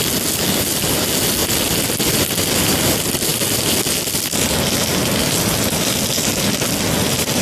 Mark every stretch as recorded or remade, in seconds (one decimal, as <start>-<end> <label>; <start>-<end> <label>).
0.0-7.4 recorded